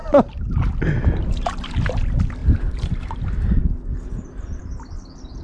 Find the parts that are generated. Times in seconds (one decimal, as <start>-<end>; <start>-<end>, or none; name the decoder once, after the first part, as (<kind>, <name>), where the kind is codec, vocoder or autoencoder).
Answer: none